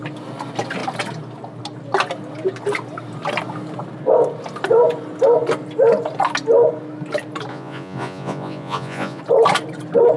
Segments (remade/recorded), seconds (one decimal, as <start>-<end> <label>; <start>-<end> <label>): 0.0-7.5 recorded; 7.5-9.2 remade; 9.2-10.2 recorded